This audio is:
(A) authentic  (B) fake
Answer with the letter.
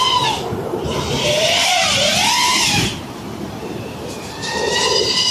B